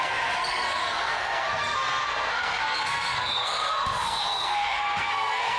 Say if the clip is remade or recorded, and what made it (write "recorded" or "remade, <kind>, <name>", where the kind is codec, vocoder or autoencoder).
remade, codec, SNAC